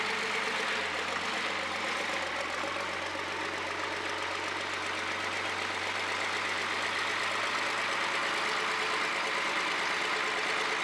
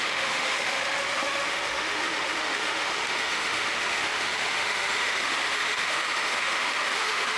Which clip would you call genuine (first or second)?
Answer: first